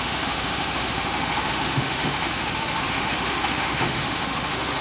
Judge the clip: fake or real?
fake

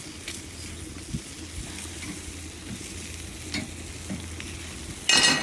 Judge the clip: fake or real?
real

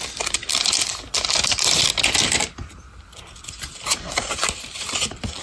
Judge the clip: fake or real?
real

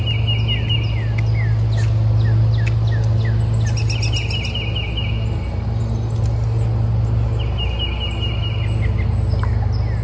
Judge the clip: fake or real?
real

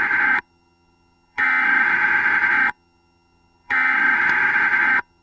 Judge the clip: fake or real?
fake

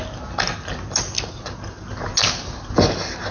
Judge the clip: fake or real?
real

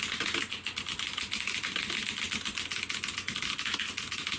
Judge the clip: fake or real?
real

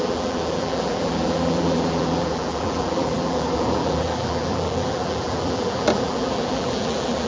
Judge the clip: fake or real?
fake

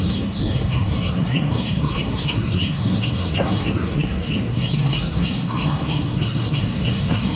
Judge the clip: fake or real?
fake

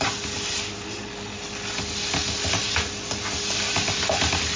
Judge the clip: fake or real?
real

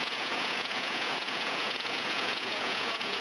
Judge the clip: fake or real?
fake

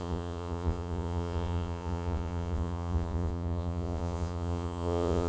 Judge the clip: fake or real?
fake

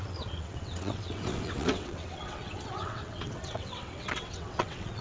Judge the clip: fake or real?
fake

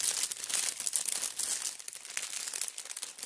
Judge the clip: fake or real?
real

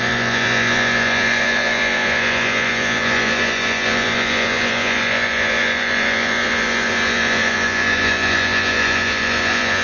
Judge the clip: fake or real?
fake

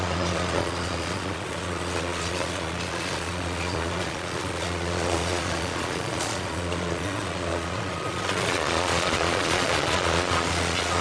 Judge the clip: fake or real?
fake